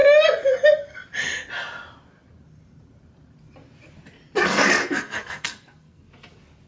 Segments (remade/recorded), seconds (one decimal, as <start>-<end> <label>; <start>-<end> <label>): 0.0-4.8 recorded; 4.8-6.0 remade; 6.0-6.7 recorded